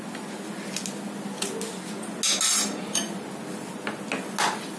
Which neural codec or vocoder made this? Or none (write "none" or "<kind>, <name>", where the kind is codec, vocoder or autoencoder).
none